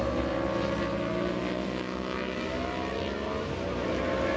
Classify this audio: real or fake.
real